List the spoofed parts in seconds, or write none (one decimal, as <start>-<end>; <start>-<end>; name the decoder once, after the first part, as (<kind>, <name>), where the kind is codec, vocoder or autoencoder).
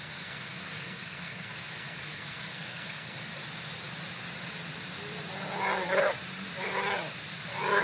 0.0-3.3 (codec, SNAC)